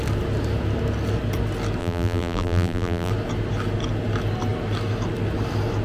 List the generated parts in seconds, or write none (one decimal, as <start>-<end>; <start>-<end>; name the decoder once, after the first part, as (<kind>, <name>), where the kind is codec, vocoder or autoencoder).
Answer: 1.8-3.1 (vocoder, BigVGAN v2)

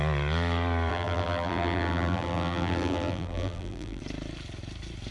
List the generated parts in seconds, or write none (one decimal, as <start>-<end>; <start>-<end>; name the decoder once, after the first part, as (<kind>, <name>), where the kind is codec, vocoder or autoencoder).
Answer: 0.9-4.0 (vocoder, BigVGAN v2)

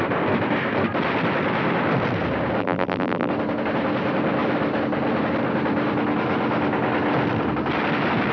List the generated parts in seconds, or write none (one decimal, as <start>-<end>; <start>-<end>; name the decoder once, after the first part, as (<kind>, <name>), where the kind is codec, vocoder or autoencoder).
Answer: 2.6-3.3 (vocoder, BigVGAN v2)

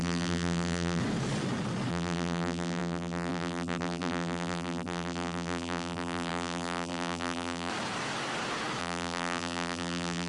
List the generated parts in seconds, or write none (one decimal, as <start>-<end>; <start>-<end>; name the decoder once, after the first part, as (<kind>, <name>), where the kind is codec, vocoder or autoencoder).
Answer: 0.0-1.0 (vocoder, BigVGAN v2); 1.9-7.7; 8.8-10.3

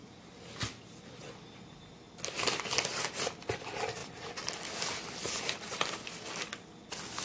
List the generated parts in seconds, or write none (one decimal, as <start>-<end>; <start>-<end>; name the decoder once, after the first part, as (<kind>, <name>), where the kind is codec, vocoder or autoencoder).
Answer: none